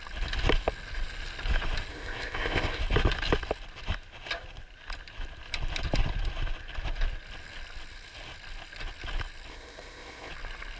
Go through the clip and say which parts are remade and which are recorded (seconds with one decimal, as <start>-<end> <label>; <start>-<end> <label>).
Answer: 0.0-1.9 recorded; 1.9-2.8 remade; 2.8-9.5 recorded; 9.5-10.3 remade; 10.3-10.8 recorded